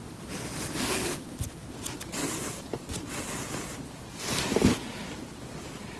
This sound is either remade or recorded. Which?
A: recorded